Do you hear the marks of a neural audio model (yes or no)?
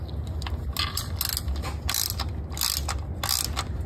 no